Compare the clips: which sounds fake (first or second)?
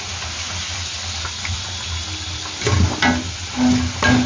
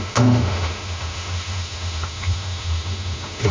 second